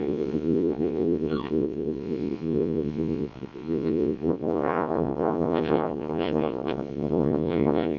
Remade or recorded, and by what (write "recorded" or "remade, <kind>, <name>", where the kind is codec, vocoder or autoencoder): remade, vocoder, Vocos